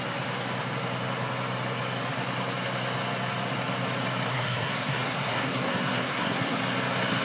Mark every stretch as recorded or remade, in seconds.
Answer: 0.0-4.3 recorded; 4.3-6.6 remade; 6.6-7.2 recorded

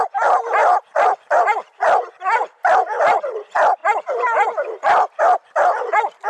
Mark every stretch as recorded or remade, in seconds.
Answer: 0.0-6.3 recorded

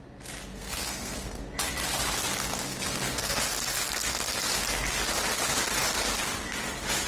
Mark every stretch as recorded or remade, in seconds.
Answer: 0.0-0.5 recorded; 0.5-1.4 remade; 1.4-2.7 recorded; 2.7-3.4 remade; 3.4-7.1 recorded

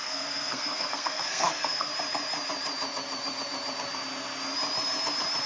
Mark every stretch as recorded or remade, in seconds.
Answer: 0.0-1.9 remade; 1.9-5.5 recorded

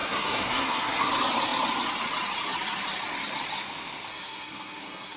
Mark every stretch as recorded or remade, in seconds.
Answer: 0.0-1.1 remade; 1.1-4.1 recorded; 4.1-5.2 remade

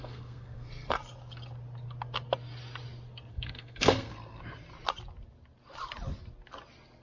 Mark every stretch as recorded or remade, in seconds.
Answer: 0.0-1.0 remade; 1.0-3.3 recorded; 3.3-4.1 remade; 4.1-7.0 recorded

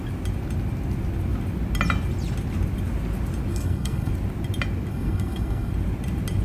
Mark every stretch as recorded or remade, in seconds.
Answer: 0.0-3.5 recorded; 3.5-4.1 remade; 4.1-4.9 recorded; 4.9-5.7 remade; 5.7-6.4 recorded

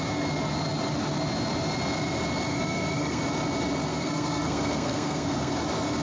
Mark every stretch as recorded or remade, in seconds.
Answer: 0.0-2.5 recorded; 2.5-3.2 remade; 3.2-3.9 recorded; 3.9-5.5 remade; 5.5-6.0 recorded